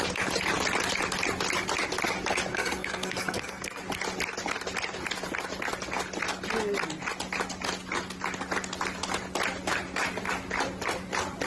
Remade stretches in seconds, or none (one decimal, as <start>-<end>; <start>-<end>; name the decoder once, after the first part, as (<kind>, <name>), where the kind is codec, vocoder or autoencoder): 2.5-3.8 (codec, SNAC)